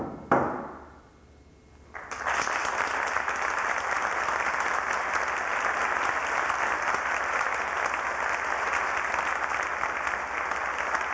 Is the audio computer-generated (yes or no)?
no